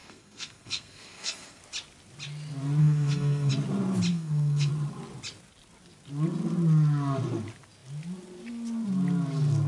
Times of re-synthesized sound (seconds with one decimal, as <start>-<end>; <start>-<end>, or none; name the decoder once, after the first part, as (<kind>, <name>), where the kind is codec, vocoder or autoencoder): 0.0-1.6 (codec, SNAC); 2.8-3.5; 4.1-4.7